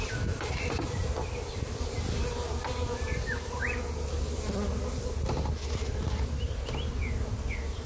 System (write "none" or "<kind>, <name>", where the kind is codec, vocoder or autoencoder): none